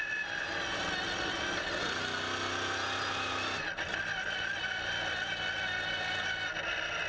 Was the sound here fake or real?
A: real